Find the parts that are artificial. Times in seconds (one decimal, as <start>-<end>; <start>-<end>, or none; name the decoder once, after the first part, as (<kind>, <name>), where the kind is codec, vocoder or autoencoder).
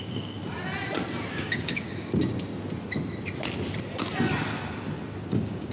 0.0-0.4 (codec, DAC); 1.3-1.9; 5.3-5.7